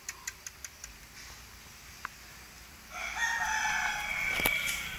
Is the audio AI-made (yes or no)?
no